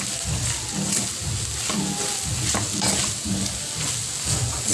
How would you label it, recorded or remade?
recorded